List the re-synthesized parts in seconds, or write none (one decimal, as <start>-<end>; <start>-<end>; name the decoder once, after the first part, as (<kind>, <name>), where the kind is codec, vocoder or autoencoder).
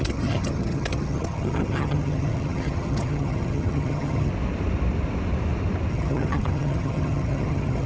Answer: 0.0-4.3 (vocoder, HiFi-GAN); 5.9-7.9